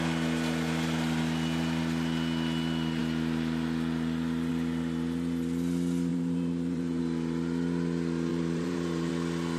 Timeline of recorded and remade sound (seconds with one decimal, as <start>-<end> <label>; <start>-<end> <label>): 0.0-6.1 recorded; 6.1-7.0 remade; 7.0-8.3 recorded; 8.3-9.1 remade; 9.1-9.6 recorded